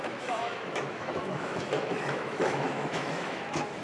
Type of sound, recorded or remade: remade